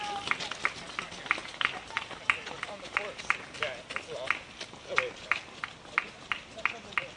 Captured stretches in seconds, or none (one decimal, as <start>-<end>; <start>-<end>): 0.0-7.2